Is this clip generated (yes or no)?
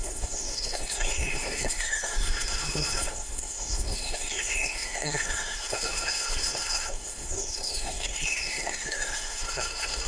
yes